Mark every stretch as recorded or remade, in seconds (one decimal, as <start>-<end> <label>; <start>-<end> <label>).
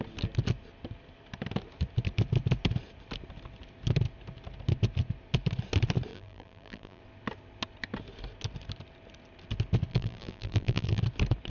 0.0-6.1 recorded; 6.1-7.0 remade; 7.0-9.9 recorded; 9.9-11.0 remade; 11.0-11.5 recorded